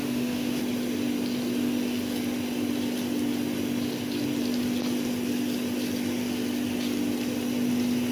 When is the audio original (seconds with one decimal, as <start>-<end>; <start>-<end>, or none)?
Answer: 0.6-8.1